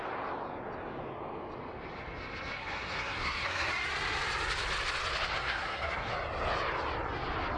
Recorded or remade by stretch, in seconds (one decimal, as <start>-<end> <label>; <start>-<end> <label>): 0.0-2.6 recorded; 2.6-3.7 remade; 3.7-5.4 recorded; 5.4-6.1 remade; 6.1-7.6 recorded